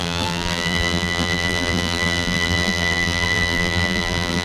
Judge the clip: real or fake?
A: fake